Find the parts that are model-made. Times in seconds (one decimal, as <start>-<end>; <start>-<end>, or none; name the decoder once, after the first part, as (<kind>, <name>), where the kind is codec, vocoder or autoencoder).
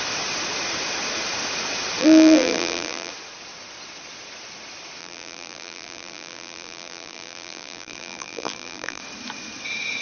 2.0-3.1 (vocoder, BigVGAN v2); 5.0-9.0